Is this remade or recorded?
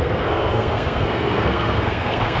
remade